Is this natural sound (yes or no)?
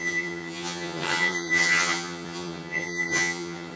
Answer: no